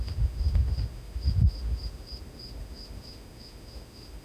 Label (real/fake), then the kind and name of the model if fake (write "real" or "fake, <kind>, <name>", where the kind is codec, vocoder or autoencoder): fake, autoencoder, DAC-VAE